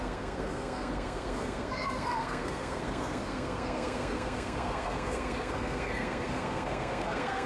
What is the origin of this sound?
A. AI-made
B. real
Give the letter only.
A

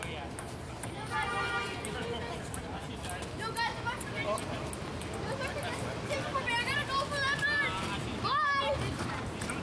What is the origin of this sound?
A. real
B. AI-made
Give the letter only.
A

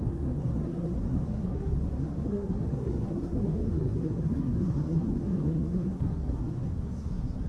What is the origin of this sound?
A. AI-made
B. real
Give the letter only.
A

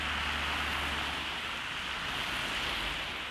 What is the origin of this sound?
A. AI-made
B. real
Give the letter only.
B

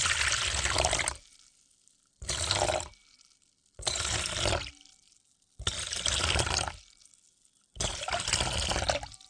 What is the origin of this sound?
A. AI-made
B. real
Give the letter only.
B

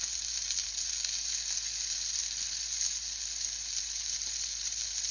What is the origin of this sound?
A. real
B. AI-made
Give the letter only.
A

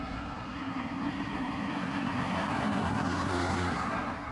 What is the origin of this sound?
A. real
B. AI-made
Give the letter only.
B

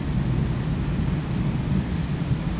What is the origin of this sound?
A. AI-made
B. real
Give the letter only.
B